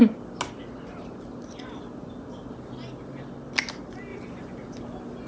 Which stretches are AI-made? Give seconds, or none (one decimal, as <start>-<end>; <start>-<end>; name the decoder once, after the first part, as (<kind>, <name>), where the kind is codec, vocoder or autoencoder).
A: none